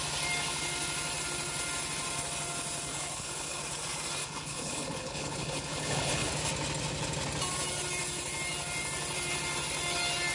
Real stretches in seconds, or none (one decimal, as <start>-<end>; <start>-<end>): 0.0-2.9; 3.6-4.2; 6.3-10.3